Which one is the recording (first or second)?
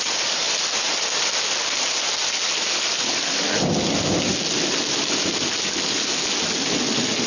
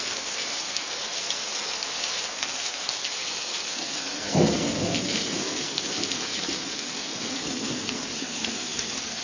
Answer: first